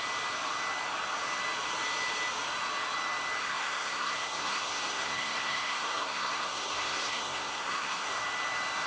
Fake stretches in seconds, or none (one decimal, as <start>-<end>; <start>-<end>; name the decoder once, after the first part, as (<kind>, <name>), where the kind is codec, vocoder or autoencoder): 3.4-8.2 (codec, SNAC)